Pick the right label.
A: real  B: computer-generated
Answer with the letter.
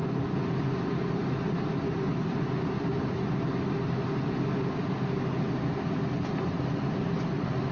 A